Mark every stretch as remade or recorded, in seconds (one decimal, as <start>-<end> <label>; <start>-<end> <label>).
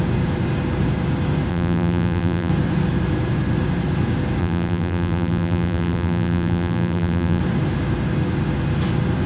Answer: 0.0-1.5 recorded; 1.5-2.5 remade; 2.5-4.4 recorded; 4.4-7.4 remade; 7.4-9.3 recorded